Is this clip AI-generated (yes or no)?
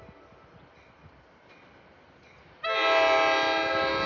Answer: no